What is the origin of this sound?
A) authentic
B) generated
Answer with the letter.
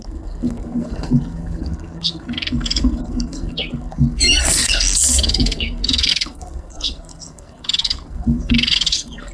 B